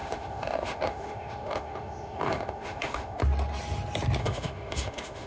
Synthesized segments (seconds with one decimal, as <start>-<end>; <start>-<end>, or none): 0.0-3.2; 4.2-5.3